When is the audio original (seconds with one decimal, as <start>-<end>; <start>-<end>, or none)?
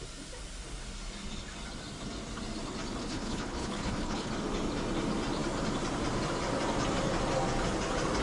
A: 0.0-3.0; 4.3-8.2